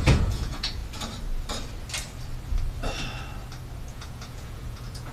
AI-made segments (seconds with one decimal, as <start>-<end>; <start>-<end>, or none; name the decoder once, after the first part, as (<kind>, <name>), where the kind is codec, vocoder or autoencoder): 0.0-0.8 (vocoder, Vocos); 3.9-5.1